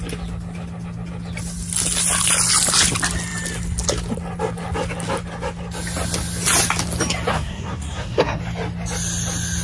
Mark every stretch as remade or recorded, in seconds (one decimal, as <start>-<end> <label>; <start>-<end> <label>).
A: 0.0-7.3 recorded; 7.3-8.4 remade; 8.4-9.6 recorded